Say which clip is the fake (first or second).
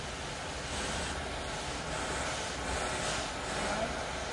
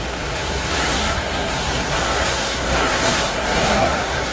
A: second